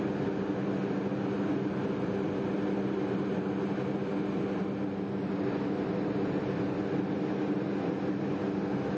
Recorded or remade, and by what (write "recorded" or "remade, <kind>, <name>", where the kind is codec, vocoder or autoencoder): recorded